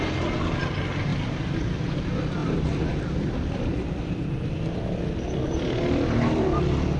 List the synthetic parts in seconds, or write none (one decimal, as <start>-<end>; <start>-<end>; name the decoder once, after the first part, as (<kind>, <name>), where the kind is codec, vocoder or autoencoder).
1.1-1.9 (vocoder, BigVGAN v2); 2.4-6.6